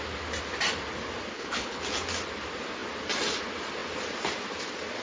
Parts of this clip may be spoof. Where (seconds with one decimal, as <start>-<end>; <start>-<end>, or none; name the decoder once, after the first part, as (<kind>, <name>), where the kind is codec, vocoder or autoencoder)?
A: 1.3-1.8 (codec, HILCodec)